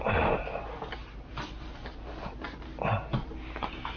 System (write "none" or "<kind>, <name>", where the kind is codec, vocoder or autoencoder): none